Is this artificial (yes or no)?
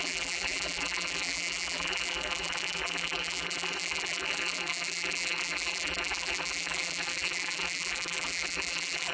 yes